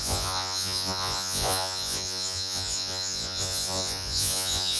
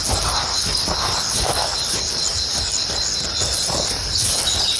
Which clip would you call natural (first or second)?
second